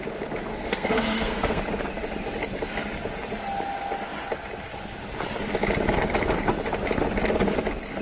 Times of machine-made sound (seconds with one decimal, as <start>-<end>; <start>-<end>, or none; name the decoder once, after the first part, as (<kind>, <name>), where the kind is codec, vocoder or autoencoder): 0.5-1.6 (codec, SNAC)